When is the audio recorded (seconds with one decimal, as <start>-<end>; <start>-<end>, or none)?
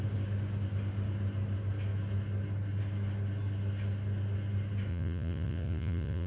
0.0-4.9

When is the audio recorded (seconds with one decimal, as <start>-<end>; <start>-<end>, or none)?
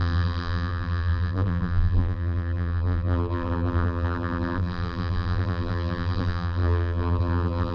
none